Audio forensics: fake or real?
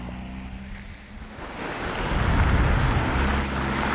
real